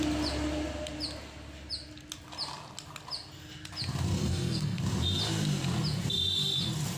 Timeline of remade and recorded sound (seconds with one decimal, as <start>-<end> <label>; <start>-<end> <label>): 0.0-4.2 recorded; 4.2-4.8 remade; 4.8-7.0 recorded